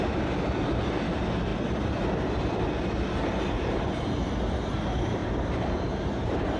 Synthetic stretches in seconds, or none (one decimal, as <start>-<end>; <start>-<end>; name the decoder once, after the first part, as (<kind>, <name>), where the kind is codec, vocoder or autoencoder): 5.2-6.6 (vocoder, BigVGAN v2)